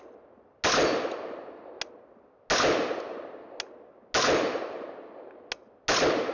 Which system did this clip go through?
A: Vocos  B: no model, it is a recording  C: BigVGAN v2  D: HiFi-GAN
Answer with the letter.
B